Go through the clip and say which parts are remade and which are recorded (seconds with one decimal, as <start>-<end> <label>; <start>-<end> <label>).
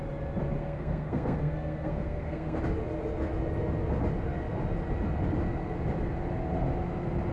0.0-0.6 recorded; 0.6-2.6 remade; 2.6-7.3 recorded